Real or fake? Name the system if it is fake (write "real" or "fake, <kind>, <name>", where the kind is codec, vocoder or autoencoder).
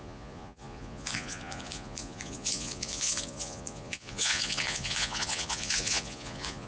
fake, vocoder, Vocos